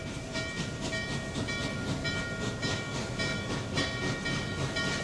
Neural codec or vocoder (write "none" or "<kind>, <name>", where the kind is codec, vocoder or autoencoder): none